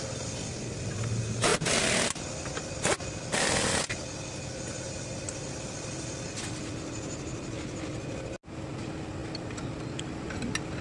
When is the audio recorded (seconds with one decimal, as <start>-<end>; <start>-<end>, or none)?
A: 0.0-10.8